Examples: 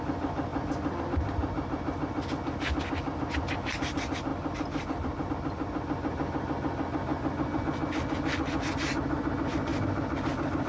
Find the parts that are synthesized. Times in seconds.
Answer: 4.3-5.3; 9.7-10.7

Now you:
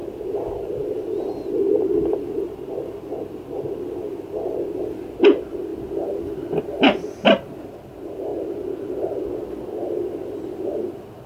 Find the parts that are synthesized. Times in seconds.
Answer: none

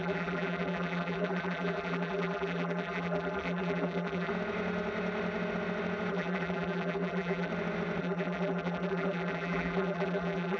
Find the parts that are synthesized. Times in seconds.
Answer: 0.0-4.3; 6.1-7.5; 8.0-10.6

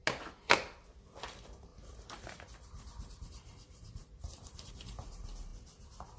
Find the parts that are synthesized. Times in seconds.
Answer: 1.1-5.5

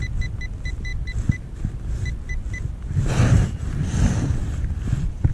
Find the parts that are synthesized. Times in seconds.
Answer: 4.4-5.3

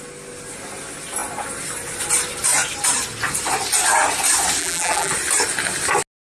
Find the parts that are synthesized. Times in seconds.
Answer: 4.6-5.1

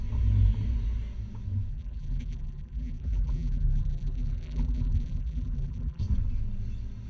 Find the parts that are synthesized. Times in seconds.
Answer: 1.7-6.0

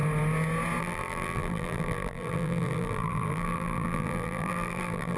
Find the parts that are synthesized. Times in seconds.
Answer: 0.8-5.2